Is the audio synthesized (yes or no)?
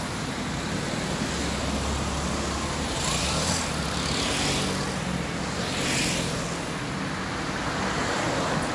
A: no